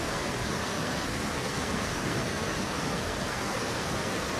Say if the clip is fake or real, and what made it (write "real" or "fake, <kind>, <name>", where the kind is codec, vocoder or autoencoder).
fake, codec, SNAC